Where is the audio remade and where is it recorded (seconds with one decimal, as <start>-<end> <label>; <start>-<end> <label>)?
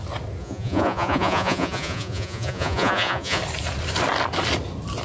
0.0-0.4 recorded; 0.4-3.4 remade; 3.4-5.0 recorded